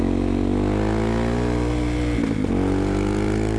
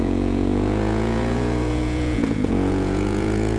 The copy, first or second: second